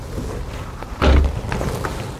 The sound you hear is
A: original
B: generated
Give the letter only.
A